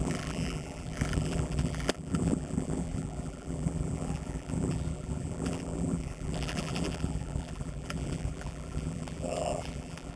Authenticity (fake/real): fake